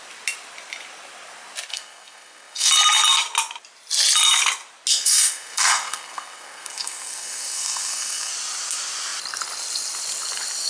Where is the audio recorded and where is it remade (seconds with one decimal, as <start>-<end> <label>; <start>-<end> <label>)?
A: 0.0-1.7 recorded; 1.7-2.7 remade; 2.7-4.9 recorded; 4.9-8.3 remade; 8.3-10.7 recorded